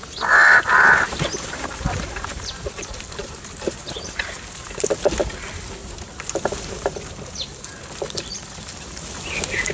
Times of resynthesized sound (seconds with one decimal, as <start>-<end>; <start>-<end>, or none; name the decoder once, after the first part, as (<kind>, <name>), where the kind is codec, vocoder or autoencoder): 3.2-4.9 (vocoder, BigVGAN v2)